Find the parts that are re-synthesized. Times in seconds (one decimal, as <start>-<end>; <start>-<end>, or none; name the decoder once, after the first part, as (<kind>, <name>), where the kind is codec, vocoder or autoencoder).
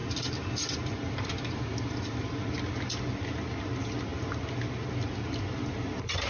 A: 0.0-1.5 (vocoder, BigVGAN v2)